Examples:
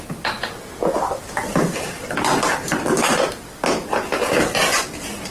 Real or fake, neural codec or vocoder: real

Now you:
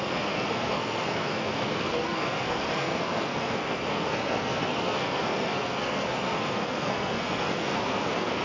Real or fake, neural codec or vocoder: fake, codec, SNAC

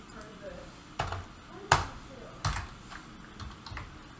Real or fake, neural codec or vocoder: real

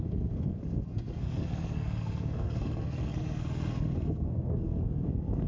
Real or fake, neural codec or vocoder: fake, codec, SNAC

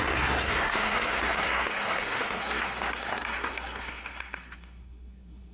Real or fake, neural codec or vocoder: fake, codec, SNAC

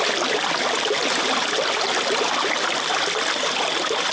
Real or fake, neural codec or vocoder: real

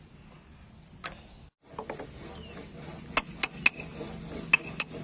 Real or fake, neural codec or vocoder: real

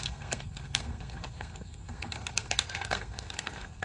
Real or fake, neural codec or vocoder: fake, codec, SNAC